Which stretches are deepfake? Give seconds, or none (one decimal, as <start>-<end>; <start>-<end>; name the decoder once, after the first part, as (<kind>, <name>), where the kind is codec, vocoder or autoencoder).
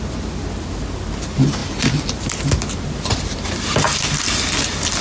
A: none